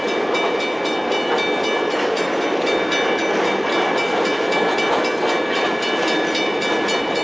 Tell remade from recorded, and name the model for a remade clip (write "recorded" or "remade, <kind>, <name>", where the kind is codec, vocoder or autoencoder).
recorded